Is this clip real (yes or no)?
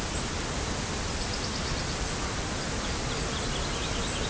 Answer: yes